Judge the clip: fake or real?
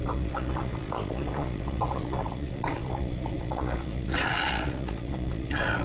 fake